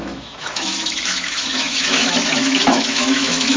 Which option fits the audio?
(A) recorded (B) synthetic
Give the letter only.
B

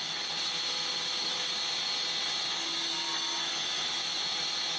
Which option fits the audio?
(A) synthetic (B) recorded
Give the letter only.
B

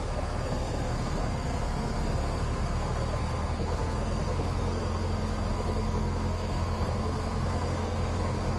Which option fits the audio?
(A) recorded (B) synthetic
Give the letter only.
B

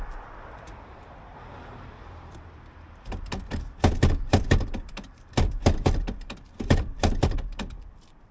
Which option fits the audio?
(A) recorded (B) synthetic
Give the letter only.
B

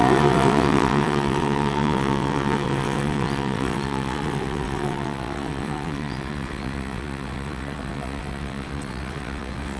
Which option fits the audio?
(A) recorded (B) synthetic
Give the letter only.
B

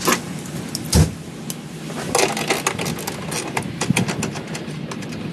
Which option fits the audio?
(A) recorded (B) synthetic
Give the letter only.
A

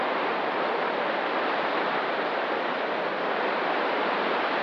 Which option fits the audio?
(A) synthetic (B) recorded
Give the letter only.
A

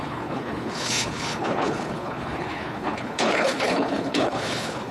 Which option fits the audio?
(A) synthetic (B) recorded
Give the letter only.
A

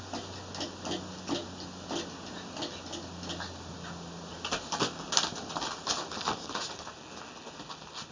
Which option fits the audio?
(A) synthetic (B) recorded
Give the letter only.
B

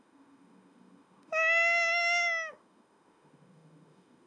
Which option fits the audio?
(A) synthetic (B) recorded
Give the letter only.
A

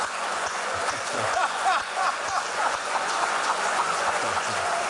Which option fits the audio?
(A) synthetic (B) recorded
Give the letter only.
A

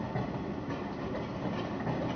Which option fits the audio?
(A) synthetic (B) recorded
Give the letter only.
B